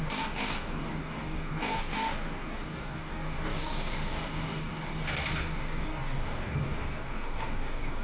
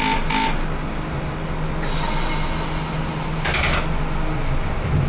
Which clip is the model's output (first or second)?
first